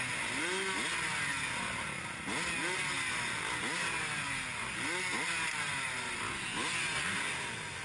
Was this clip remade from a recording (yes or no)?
no